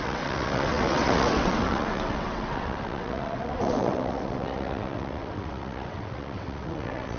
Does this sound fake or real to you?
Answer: fake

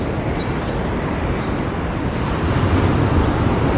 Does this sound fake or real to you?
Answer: real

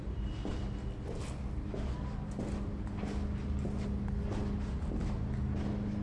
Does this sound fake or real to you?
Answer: real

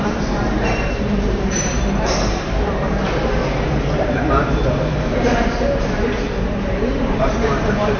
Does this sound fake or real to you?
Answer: fake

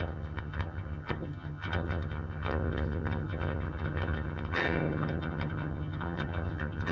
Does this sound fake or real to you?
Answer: fake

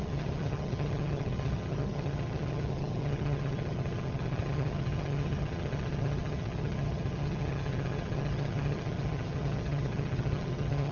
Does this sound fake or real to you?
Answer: fake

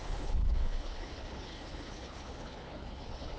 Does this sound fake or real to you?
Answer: fake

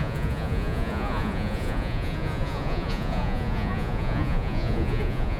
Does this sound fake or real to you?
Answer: fake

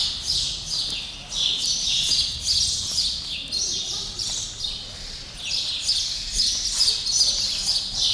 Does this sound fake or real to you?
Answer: real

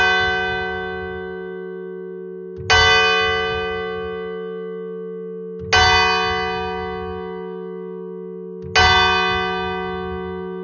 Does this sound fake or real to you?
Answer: real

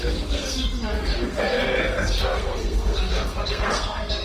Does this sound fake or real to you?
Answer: fake